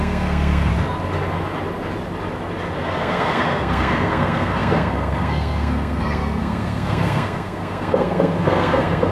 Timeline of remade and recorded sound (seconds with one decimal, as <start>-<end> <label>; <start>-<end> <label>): 0.0-0.7 remade; 0.7-2.8 recorded; 2.8-9.1 remade